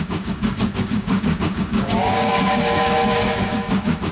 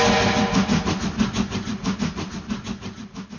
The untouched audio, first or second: second